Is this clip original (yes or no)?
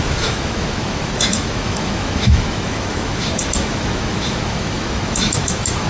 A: no